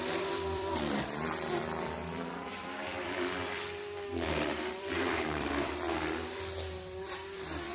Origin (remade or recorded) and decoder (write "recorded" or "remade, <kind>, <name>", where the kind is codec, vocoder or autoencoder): remade, vocoder, BigVGAN v2